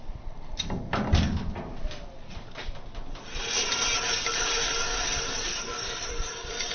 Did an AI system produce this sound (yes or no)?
yes